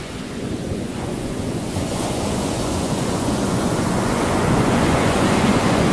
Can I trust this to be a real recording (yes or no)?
no